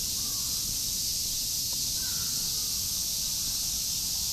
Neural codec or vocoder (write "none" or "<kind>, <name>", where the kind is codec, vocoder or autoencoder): none